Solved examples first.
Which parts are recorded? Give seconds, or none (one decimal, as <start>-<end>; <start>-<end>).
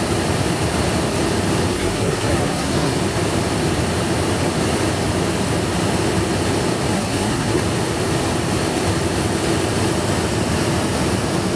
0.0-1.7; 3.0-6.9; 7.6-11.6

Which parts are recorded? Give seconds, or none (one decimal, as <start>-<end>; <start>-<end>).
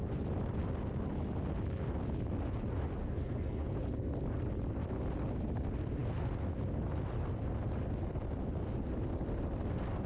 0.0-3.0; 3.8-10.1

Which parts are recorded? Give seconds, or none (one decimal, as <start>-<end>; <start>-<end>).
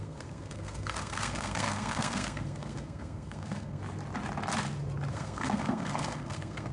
3.8-5.1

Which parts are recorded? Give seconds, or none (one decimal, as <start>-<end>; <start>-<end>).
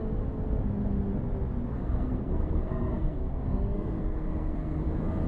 0.0-1.7; 4.8-5.3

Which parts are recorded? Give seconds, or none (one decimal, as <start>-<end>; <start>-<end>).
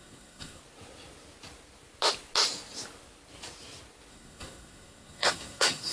0.6-4.1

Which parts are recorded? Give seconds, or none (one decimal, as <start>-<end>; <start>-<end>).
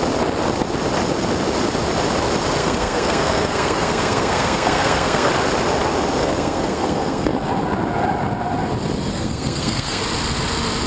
0.0-2.6; 5.3-6.2; 7.5-9.1; 10.0-10.9